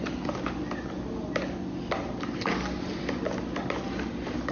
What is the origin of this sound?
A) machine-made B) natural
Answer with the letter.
B